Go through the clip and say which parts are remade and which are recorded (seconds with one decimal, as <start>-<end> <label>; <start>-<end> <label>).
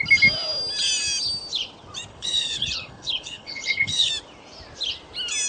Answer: 0.0-2.1 recorded; 2.1-4.1 remade; 4.1-5.5 recorded